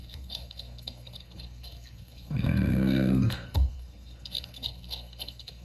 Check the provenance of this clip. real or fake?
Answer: fake